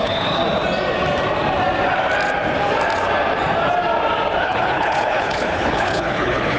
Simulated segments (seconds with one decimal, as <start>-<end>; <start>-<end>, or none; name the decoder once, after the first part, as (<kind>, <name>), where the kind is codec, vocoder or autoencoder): 0.0-0.4 (codec, HILCodec); 4.4-6.6